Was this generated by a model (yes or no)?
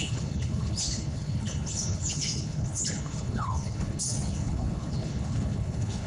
yes